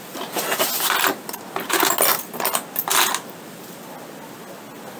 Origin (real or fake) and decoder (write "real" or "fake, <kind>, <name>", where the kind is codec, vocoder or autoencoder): real